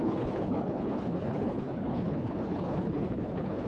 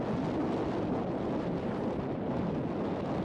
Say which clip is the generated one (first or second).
first